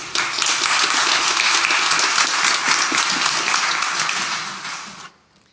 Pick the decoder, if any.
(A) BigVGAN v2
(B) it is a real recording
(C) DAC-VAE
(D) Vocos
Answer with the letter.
B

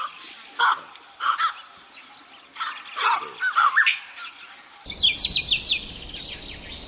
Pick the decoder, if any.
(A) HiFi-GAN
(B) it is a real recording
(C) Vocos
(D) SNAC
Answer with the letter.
B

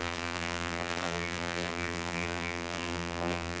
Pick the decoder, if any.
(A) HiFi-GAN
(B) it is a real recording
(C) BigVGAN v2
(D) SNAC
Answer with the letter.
C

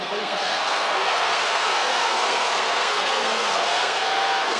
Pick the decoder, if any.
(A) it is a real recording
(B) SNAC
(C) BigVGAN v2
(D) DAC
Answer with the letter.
B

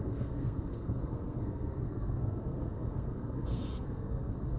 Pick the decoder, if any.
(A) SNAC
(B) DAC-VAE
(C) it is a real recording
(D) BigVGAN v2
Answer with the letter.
A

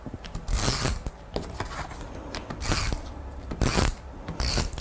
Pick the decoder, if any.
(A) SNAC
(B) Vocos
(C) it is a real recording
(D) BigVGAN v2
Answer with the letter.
C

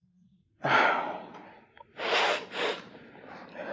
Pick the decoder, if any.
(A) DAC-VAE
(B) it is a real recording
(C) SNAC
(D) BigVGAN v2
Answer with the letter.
B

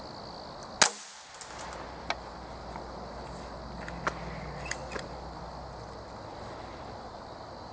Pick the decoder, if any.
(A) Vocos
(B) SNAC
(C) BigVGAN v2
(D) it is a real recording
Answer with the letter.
D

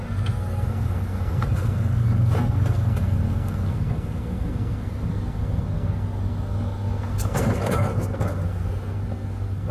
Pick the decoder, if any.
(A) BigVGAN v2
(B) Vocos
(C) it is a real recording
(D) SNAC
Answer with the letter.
D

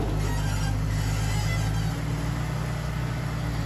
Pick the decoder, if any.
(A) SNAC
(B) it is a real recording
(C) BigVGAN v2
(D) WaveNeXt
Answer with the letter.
B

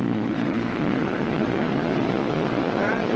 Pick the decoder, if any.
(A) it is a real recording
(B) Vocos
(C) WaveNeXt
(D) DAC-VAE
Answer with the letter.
B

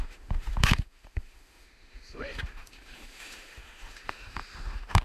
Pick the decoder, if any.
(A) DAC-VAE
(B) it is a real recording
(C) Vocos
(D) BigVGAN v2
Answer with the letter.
A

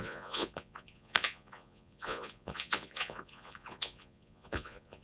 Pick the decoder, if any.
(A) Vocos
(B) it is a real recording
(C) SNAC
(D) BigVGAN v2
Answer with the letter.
A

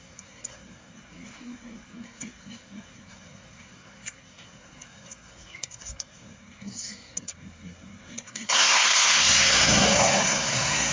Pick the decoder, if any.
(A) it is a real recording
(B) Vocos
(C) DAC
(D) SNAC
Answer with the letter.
D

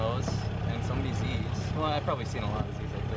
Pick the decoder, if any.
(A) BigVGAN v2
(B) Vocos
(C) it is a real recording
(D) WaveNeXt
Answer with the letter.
C